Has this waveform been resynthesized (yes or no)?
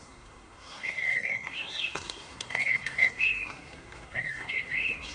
yes